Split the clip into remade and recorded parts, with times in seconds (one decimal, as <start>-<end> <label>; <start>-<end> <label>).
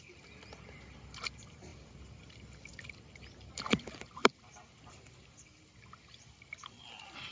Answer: 0.0-7.3 recorded